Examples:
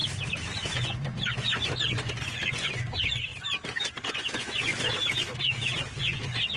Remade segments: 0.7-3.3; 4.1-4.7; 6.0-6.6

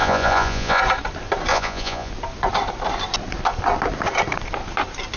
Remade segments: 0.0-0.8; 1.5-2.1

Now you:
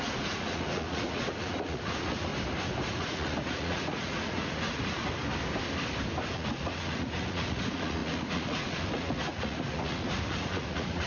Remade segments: 0.0-2.3; 2.9-5.0; 6.3-11.1

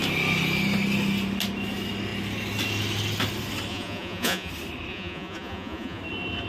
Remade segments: 3.7-4.5; 4.9-6.0

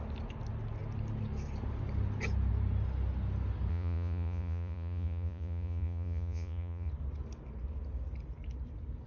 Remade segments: 3.7-6.9

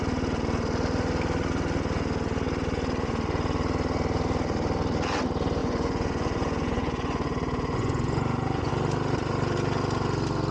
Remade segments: 5.6-8.7

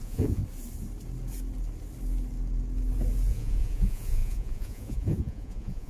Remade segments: 0.0-0.4; 3.3-5.9